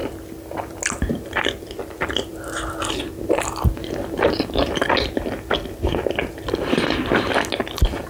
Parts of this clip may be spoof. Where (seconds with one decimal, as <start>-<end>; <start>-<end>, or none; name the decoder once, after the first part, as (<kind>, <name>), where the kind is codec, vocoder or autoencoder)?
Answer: none